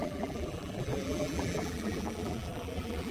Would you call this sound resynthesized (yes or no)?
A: yes